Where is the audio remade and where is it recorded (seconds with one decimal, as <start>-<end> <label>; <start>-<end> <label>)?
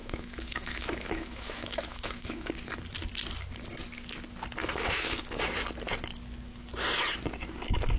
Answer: 0.0-2.5 remade; 2.5-4.6 recorded; 4.6-5.4 remade; 5.4-8.0 recorded